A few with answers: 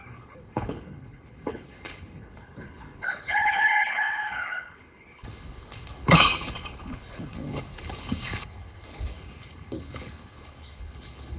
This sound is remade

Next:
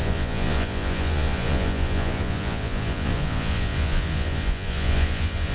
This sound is remade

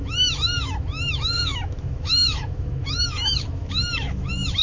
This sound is remade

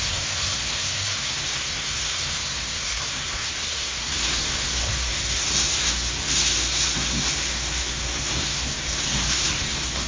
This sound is remade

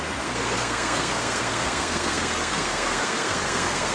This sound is remade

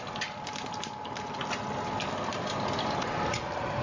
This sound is recorded